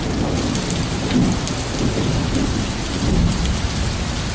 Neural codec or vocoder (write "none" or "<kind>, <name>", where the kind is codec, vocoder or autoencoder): none